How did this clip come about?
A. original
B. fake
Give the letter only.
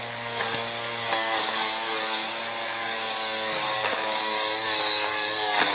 B